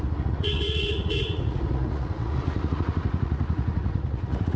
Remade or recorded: remade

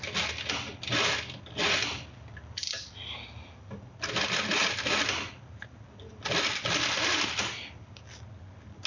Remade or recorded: recorded